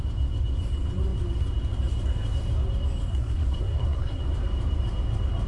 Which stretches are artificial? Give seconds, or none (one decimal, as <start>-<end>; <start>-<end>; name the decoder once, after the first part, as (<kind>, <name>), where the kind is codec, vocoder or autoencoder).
3.1-4.2 (codec, SNAC)